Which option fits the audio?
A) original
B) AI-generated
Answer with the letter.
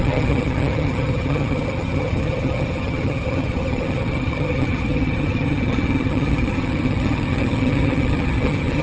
B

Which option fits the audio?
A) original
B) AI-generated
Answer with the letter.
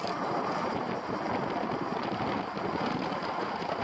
A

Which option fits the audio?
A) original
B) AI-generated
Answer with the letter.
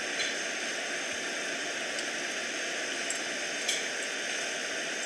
A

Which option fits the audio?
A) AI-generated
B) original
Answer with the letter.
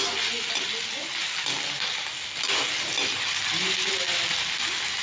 B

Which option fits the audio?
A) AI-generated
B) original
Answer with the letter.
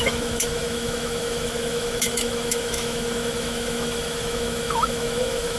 A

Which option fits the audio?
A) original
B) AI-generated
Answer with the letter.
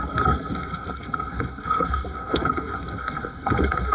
B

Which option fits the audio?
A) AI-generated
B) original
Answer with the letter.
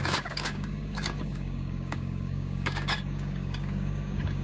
A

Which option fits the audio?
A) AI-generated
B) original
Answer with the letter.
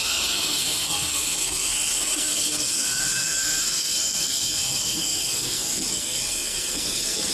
A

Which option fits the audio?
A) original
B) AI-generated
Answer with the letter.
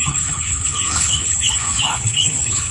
B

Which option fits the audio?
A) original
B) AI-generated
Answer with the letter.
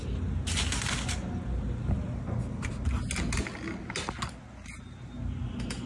A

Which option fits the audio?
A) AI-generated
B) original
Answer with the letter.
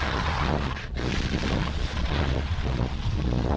A